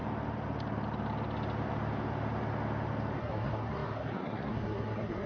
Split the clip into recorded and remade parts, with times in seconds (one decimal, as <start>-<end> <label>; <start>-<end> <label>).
0.0-3.2 recorded; 3.2-5.3 remade